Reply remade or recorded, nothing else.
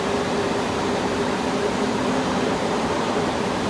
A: remade